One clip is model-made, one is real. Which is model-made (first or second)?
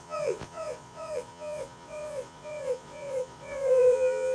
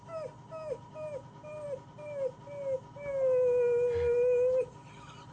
first